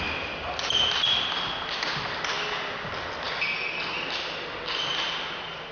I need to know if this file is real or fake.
real